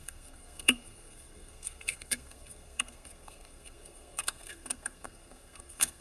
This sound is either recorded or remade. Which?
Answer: remade